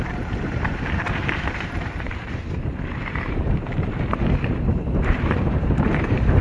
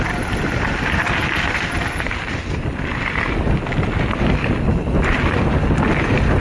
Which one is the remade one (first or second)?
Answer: first